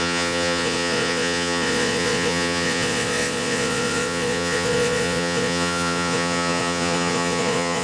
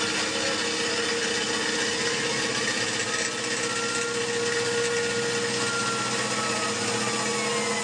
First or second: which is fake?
first